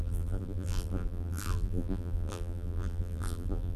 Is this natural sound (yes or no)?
no